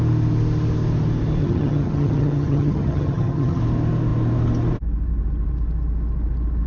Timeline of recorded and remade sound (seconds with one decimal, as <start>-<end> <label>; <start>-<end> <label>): 0.0-1.4 recorded; 1.4-3.6 remade; 3.6-6.7 recorded